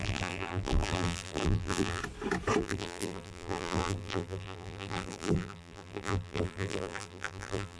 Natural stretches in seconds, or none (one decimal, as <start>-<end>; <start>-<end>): 2.0-2.6